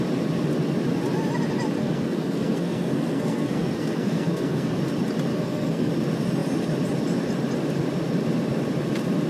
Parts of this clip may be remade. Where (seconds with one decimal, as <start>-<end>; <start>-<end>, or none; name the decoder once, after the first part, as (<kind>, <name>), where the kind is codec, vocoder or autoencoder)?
1.8-4.8 (codec, SNAC); 5.3-5.9